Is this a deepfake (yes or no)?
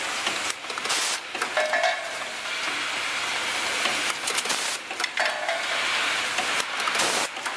no